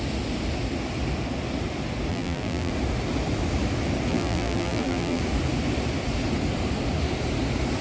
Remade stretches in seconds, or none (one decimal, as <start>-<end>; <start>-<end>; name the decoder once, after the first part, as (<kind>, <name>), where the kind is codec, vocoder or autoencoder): 2.1-2.7 (vocoder, BigVGAN v2); 4.1-5.2

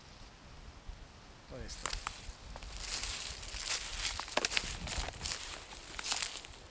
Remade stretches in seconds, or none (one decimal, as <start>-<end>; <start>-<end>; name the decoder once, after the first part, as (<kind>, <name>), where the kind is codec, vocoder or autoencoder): none

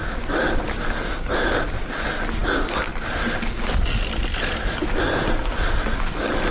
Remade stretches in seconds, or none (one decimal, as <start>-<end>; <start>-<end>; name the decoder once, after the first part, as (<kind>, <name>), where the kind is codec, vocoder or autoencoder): 0.0-0.6 (vocoder, BigVGAN v2)